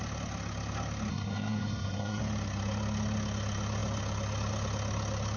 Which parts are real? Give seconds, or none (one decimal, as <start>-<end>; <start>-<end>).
0.0-1.1; 2.2-5.4